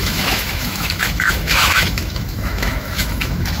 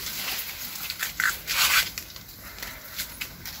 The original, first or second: second